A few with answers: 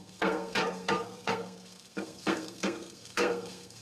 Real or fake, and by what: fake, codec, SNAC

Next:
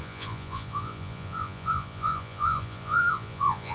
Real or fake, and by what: fake, vocoder, Vocos